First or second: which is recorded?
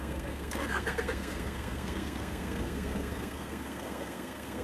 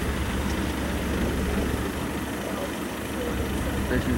second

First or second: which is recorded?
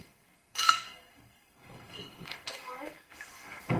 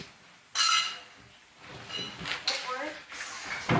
second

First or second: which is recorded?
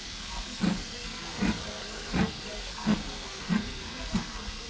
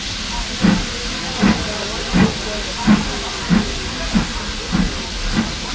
second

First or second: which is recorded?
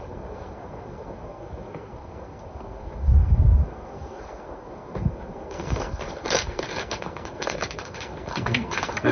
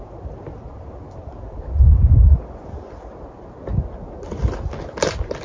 second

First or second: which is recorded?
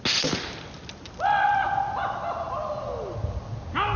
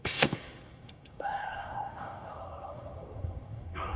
first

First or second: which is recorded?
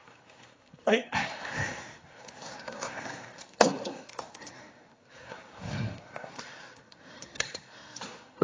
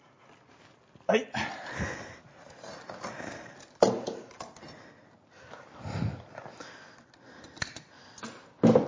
second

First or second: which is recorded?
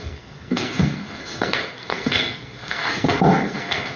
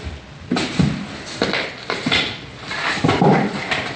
second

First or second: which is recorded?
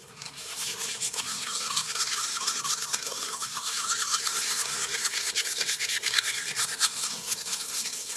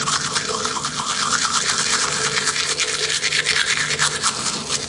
second